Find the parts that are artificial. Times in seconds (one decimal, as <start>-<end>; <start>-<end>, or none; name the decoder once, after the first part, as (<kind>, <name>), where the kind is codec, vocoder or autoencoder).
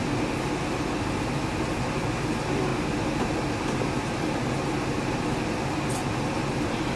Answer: none